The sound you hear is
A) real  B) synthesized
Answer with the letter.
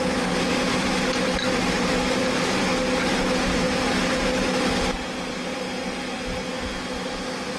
A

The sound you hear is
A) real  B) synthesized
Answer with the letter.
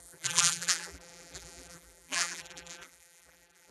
B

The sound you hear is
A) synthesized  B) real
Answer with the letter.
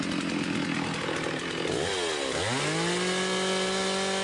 B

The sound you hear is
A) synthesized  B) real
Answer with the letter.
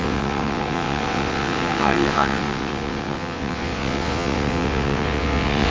A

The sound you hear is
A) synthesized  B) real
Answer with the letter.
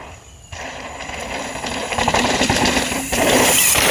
A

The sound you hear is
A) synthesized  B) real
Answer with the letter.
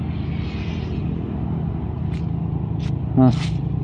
B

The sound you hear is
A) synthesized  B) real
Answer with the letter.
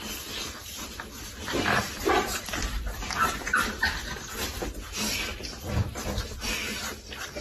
A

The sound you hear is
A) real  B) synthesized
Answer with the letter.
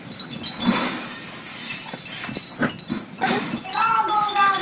A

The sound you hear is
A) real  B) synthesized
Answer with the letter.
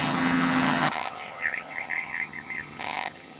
B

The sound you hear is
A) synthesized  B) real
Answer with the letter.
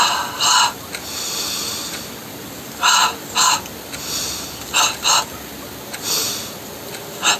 B